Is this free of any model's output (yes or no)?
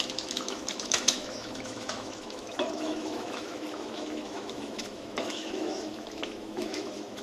no